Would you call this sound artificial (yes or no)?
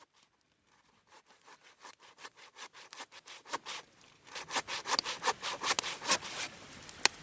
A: no